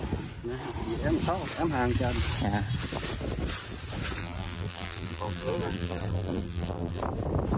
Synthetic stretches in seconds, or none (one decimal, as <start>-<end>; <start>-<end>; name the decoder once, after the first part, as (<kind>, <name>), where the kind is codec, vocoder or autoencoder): 4.2-7.0 (vocoder, BigVGAN v2)